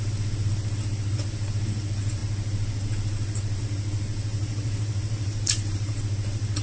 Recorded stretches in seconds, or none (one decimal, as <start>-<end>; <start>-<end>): 0.0-4.3; 6.0-6.6